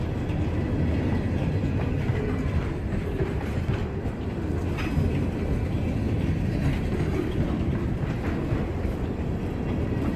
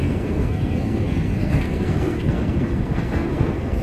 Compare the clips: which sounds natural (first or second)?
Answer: first